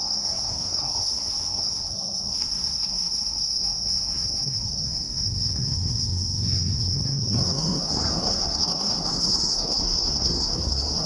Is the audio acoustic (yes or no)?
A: no